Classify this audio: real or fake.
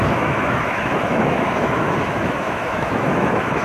fake